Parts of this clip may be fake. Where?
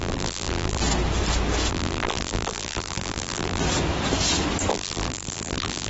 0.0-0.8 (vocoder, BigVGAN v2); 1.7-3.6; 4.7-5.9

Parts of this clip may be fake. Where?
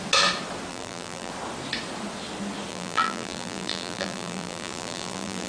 0.7-1.3 (vocoder, BigVGAN v2); 2.7-5.5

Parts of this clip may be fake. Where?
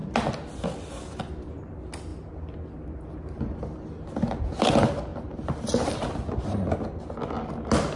none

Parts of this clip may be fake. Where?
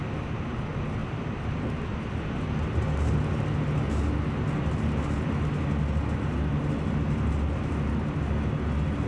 1.0-1.8 (vocoder, BigVGAN v2)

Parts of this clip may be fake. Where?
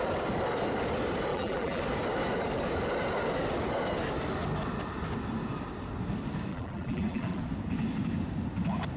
1.3-1.8 (vocoder, BigVGAN v2); 6.5-7.4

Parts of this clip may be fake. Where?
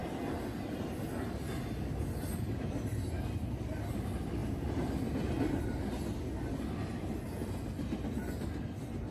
none